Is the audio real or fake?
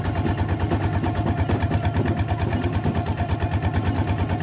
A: real